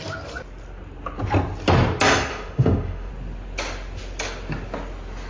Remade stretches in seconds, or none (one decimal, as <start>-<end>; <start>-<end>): 2.3-3.1